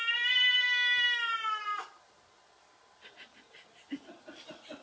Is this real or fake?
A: real